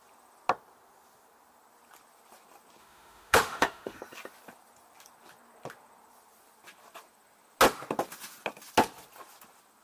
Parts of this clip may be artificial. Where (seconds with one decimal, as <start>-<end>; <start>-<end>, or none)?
2.8-4.0